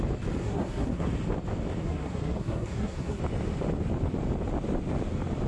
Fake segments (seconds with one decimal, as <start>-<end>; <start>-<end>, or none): 0.4-1.1; 1.8-3.2